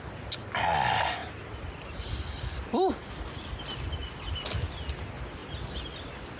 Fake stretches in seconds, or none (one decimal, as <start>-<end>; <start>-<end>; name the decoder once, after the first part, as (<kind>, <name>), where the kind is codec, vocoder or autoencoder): none